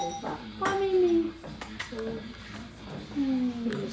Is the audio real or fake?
real